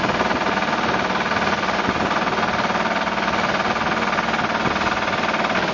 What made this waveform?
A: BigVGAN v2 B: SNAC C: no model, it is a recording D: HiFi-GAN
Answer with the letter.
C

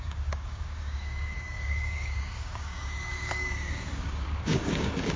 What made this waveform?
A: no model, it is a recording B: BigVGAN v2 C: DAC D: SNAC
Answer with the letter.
C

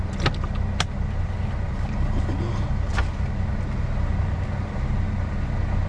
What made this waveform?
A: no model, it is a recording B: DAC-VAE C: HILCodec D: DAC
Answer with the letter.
A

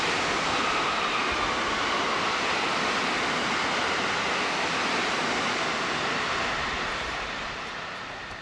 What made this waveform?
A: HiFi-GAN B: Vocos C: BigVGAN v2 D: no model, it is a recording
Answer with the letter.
D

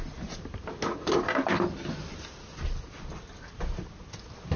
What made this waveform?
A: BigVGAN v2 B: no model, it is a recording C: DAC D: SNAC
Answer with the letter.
B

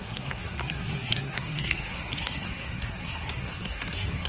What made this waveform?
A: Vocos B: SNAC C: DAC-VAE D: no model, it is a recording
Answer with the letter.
B